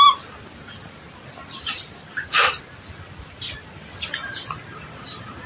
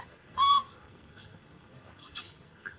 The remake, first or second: second